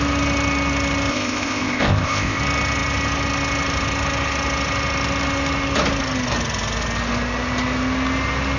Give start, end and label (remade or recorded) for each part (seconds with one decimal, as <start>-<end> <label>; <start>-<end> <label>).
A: 0.0-1.1 recorded; 1.1-2.4 remade; 2.4-8.6 recorded